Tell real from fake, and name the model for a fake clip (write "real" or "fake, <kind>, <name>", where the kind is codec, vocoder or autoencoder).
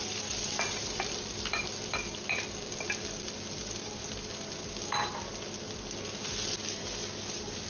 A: real